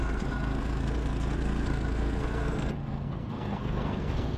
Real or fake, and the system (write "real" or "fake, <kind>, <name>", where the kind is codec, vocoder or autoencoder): fake, codec, SNAC